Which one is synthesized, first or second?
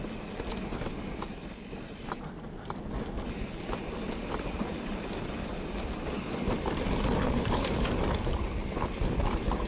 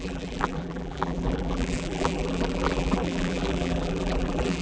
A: second